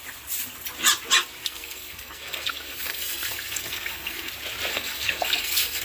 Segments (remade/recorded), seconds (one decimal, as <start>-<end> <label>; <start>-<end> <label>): 0.0-1.4 recorded; 1.4-4.3 remade; 4.3-4.7 recorded; 4.7-5.8 remade